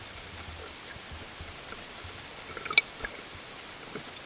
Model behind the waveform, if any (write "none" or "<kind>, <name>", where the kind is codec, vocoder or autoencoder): none